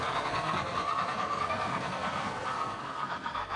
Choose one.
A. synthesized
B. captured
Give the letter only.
A